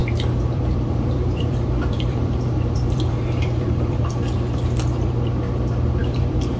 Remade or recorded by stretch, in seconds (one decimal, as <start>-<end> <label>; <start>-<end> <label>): 0.0-4.0 remade; 4.0-6.0 recorded; 6.0-6.6 remade